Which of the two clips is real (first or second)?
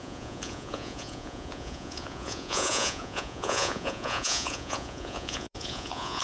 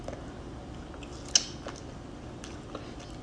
second